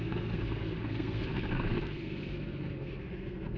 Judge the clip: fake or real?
fake